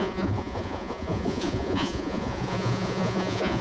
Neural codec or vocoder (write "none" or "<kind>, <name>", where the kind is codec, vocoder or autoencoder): vocoder, Vocos